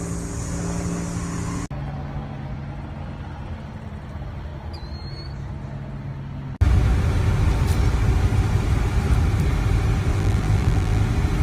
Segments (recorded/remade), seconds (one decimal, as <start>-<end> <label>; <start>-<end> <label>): 0.0-10.1 recorded; 10.1-11.0 remade; 11.0-11.4 recorded